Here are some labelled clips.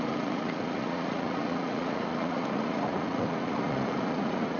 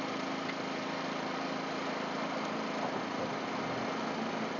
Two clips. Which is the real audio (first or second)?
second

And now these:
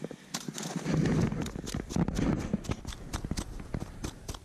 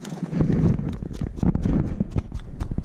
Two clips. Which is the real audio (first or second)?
first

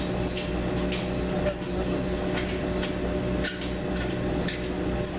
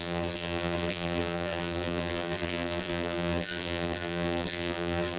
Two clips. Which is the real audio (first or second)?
first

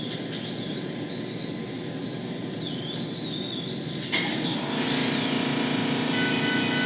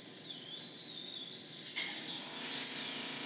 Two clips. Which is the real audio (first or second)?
first